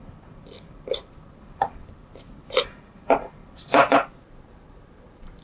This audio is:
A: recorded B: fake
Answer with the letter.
B